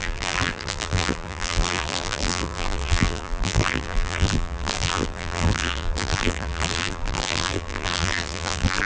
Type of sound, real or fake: fake